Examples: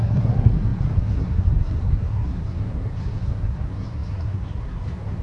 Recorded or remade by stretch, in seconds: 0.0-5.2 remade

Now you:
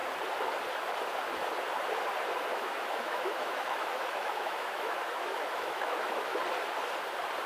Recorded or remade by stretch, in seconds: 0.0-2.5 recorded; 2.5-6.4 remade; 6.4-7.5 recorded

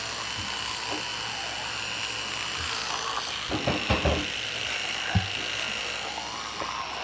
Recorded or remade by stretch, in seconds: 0.0-7.0 recorded

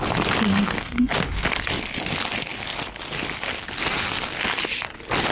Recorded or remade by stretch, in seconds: 0.0-0.5 recorded; 0.5-1.1 remade; 1.1-5.3 recorded

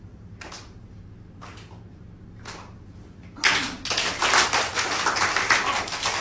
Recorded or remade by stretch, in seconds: 0.0-6.2 recorded

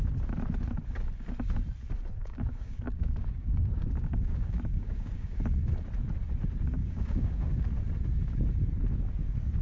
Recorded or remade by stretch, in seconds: 0.0-2.2 recorded; 2.2-5.4 remade; 5.4-6.8 recorded; 6.8-7.7 remade; 7.7-9.6 recorded

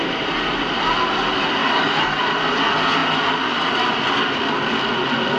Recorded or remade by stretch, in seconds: 0.0-1.6 recorded; 1.6-2.2 remade; 2.2-5.4 recorded